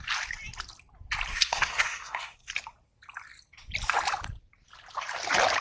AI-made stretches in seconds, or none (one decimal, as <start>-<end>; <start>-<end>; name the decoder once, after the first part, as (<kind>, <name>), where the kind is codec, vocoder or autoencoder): 1.3-2.5 (codec, SNAC)